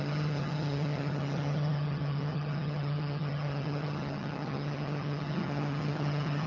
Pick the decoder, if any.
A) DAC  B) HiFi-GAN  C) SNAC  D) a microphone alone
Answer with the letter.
B